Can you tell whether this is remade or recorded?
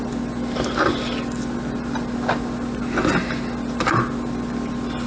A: recorded